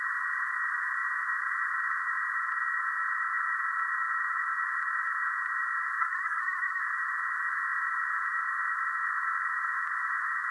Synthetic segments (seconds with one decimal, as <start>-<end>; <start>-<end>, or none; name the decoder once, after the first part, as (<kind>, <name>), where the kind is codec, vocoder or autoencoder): 6.0-6.8 (codec, SNAC)